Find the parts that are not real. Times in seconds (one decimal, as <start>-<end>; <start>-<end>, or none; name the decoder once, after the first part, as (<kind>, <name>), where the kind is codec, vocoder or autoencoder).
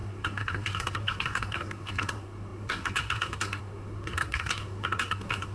0.0-5.5 (codec, SNAC)